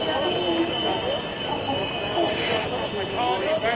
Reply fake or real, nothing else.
real